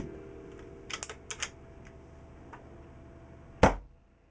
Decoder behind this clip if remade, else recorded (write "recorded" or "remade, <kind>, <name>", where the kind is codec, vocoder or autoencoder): recorded